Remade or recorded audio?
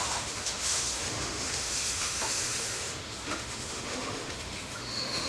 remade